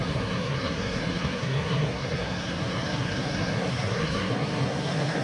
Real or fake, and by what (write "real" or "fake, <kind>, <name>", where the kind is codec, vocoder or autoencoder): fake, codec, SNAC